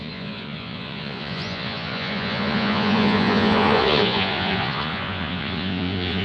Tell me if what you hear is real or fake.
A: fake